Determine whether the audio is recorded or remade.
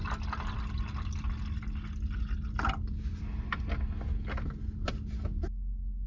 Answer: recorded